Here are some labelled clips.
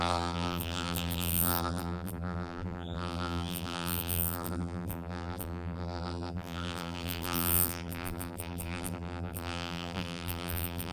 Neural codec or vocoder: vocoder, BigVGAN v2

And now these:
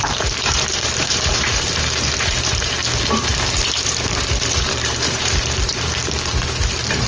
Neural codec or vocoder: vocoder, BigVGAN v2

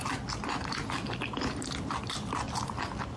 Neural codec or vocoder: none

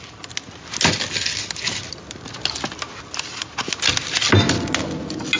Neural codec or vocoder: none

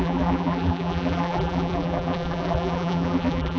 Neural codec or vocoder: vocoder, BigVGAN v2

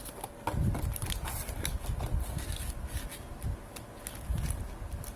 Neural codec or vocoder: none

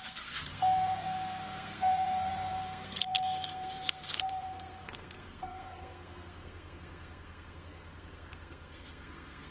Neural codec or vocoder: codec, SNAC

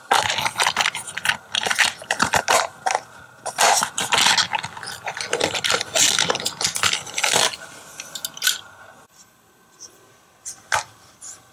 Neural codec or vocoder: none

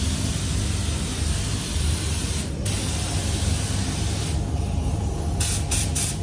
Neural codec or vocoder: none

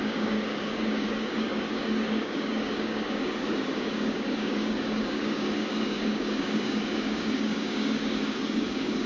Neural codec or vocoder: codec, DAC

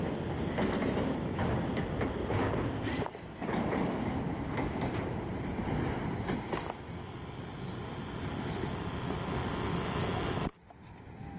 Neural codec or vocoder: none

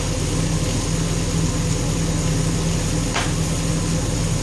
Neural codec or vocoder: none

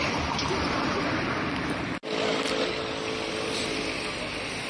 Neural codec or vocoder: none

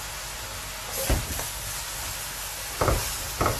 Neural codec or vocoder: none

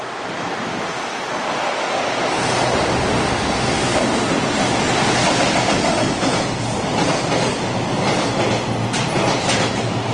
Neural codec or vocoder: none